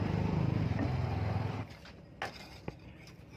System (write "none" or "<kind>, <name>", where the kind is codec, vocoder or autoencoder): none